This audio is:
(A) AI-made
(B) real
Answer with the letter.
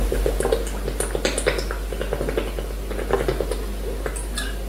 B